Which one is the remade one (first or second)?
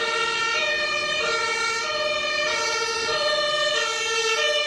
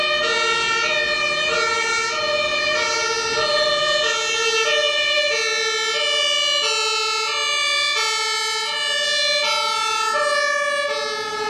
first